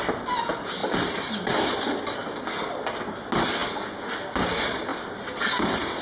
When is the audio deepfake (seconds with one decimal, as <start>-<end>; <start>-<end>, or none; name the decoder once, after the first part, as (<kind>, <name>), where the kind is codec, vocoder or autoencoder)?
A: 0.8-1.5 (vocoder, BigVGAN v2); 4.9-6.0